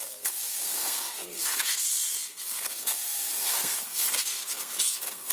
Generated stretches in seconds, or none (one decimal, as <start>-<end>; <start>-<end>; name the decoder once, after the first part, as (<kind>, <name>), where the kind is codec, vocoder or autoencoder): 0.0-5.3 (codec, SNAC)